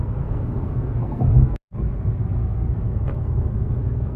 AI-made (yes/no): yes